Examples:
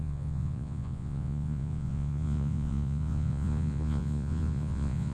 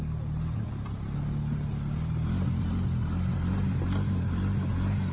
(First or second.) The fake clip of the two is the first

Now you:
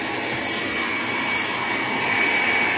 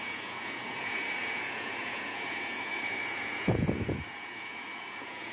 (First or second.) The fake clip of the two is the second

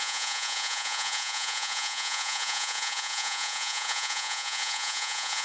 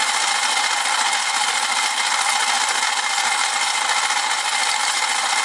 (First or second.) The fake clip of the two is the first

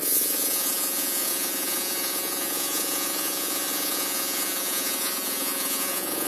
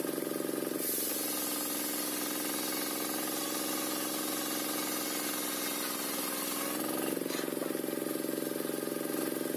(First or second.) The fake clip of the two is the first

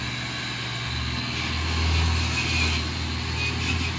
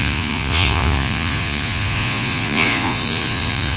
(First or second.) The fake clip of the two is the second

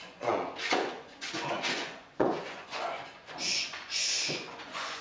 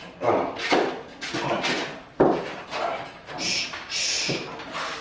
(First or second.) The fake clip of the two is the first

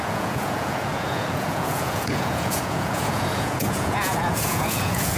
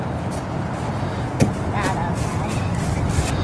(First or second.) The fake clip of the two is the first